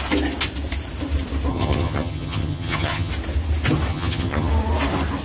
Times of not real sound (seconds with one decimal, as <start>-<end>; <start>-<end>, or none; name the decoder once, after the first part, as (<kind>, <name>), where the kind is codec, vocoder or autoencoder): 1.5-3.1 (vocoder, HiFi-GAN); 3.9-4.5